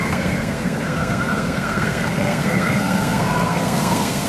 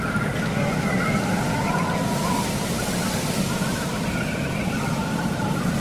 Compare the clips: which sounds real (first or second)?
second